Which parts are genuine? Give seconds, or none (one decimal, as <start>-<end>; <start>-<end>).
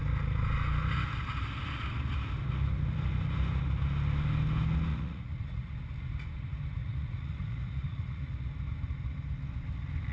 0.0-4.9; 5.7-6.8; 8.3-10.1